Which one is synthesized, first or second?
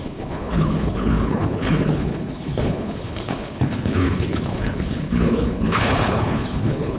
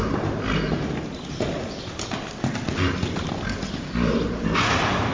first